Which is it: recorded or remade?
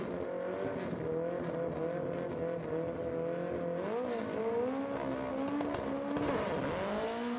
recorded